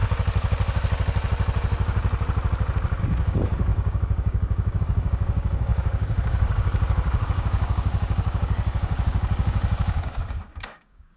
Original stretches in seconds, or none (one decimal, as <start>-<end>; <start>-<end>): 0.0-3.0